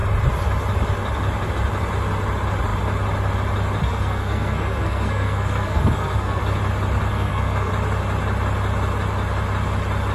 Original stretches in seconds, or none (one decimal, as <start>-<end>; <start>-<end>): 0.0-3.8; 6.4-7.1; 7.7-10.1